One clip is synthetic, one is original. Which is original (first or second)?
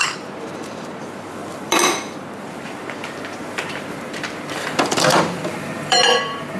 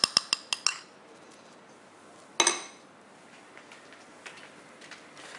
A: second